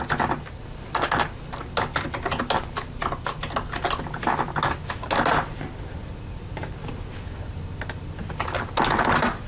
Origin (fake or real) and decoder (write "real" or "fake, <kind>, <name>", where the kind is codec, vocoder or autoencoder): real